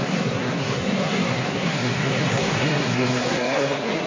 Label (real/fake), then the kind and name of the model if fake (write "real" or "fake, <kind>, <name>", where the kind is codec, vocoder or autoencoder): fake, codec, SNAC